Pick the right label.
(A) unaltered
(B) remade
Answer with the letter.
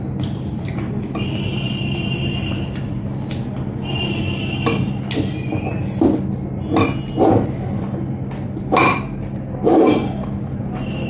A